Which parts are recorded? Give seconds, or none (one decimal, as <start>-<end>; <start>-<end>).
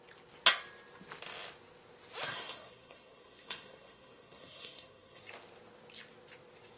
0.0-2.3; 5.2-6.8